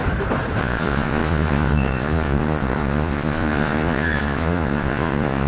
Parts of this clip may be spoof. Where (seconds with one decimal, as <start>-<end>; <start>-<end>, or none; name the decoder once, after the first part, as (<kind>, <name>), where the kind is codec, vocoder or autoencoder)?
0.6-5.5 (vocoder, Vocos)